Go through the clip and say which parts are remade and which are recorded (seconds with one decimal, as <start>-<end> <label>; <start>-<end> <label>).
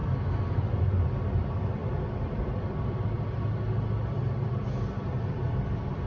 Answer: 0.0-6.1 remade